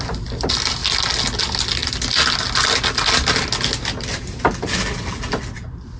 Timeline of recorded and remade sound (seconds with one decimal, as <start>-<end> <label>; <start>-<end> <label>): 0.0-6.0 recorded